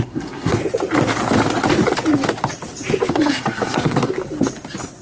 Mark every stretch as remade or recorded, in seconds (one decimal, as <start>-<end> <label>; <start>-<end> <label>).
0.0-0.6 remade; 0.6-3.1 recorded; 3.1-4.1 remade; 4.1-5.0 recorded